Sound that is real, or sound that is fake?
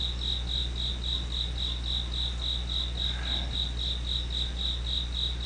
real